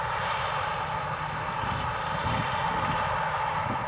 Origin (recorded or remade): recorded